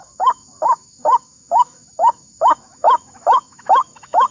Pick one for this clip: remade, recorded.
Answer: remade